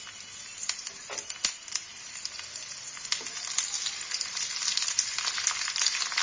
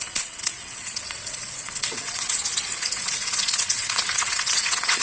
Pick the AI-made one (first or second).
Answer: second